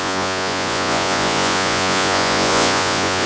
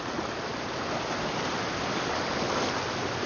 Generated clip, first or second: first